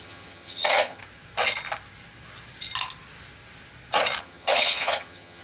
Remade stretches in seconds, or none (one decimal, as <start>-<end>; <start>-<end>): 0.0-1.0; 4.2-5.4